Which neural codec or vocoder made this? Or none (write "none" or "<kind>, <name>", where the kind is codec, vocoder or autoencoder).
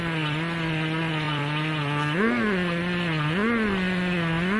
none